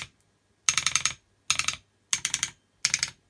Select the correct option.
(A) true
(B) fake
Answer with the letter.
A